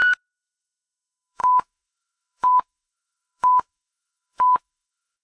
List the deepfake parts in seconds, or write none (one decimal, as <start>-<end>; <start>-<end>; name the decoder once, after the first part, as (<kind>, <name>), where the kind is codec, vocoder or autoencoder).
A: 0.0-5.2 (autoencoder, DAC-VAE)

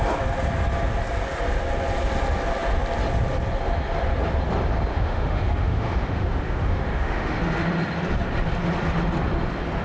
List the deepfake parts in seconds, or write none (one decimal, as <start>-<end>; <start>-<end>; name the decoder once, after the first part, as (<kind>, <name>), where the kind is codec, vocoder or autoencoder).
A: 4.9-7.4 (autoencoder, DAC-VAE)

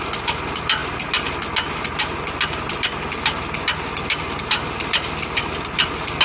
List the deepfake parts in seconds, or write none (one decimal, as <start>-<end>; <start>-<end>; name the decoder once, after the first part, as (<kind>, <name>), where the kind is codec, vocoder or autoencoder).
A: none

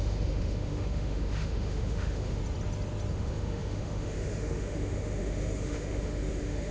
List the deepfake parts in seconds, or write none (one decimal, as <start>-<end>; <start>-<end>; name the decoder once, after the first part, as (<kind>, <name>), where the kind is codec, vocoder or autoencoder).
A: 0.0-2.4 (autoencoder, DAC-VAE); 3.1-6.7

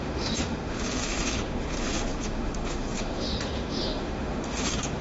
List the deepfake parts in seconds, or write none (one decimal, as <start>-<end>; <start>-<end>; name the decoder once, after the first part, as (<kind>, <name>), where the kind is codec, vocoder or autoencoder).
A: 0.0-5.0 (autoencoder, DAC-VAE)

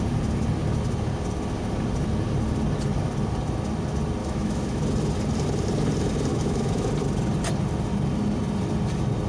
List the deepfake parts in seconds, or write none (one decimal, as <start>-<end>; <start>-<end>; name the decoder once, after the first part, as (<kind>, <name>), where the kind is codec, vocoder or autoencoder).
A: 4.2-4.8 (autoencoder, DAC-VAE); 6.3-6.9

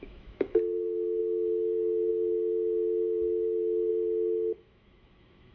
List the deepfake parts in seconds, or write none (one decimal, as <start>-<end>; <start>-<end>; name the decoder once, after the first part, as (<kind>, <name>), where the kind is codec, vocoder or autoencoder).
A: 0.0-3.9 (autoencoder, DAC-VAE); 4.6-5.5

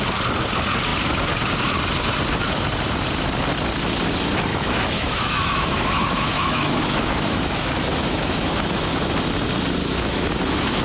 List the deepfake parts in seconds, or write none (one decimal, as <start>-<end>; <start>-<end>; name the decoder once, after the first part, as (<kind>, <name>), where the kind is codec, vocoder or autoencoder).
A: 4.5-8.5 (autoencoder, DAC-VAE); 9.8-10.4